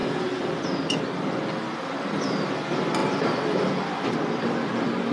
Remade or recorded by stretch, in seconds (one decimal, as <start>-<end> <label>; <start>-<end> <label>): 0.0-0.6 remade; 0.6-3.0 recorded; 3.0-3.7 remade; 3.7-5.1 recorded